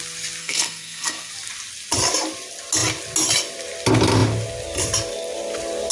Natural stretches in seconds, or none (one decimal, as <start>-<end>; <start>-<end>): 0.0-0.4; 1.3-5.9